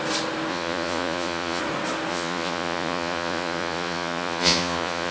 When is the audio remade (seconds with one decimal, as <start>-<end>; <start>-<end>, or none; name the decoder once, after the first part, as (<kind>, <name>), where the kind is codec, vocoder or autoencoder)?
0.5-1.6 (vocoder, Vocos); 2.1-5.1